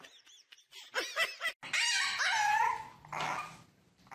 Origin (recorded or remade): recorded